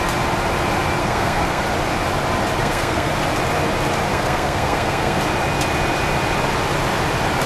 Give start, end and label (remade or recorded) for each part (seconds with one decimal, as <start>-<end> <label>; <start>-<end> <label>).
0.0-1.0 recorded; 1.0-1.6 remade; 1.6-2.6 recorded; 2.6-3.1 remade; 3.1-4.1 recorded; 4.1-5.2 remade; 5.2-7.5 recorded